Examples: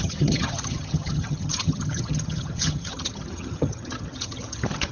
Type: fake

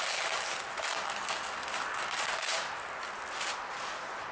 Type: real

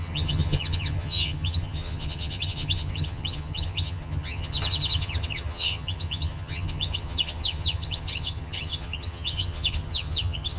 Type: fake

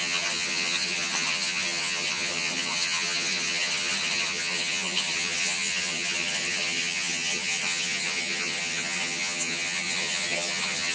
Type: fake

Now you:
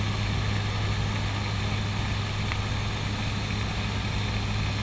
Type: real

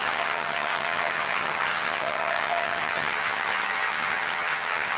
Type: fake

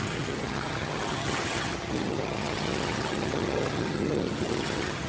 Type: fake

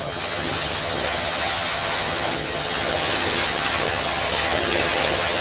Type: fake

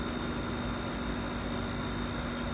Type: real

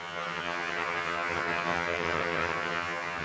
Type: fake